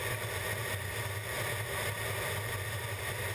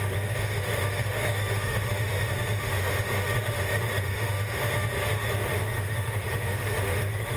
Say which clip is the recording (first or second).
first